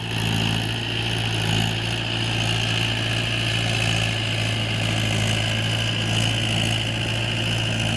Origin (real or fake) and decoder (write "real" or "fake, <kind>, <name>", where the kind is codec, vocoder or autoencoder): real